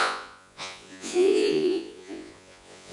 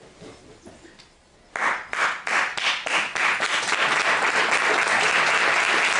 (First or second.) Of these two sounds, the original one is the second